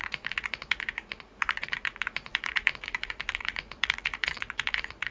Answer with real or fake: fake